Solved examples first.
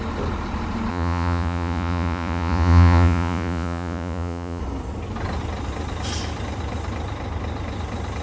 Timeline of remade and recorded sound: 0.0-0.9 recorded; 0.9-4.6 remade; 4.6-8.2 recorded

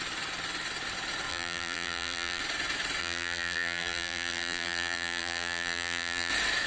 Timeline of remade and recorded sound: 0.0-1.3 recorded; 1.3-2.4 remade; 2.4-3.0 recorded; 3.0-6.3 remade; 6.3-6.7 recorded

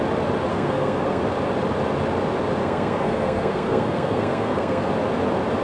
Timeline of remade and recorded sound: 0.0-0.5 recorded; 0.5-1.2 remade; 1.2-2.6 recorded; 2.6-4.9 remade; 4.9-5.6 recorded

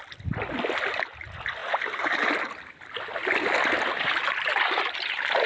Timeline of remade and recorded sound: 0.0-5.5 recorded

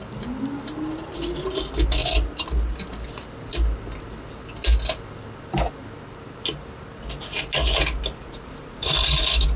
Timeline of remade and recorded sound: 0.0-9.6 recorded

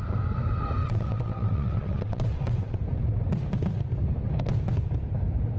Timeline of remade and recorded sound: 0.0-0.8 recorded; 0.8-2.8 remade; 2.8-5.6 recorded